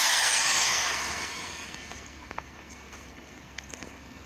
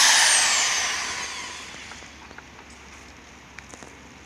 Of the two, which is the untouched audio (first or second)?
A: second